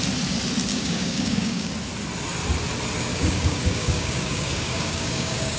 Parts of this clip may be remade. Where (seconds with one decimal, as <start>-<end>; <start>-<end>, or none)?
0.7-1.7; 3.1-5.6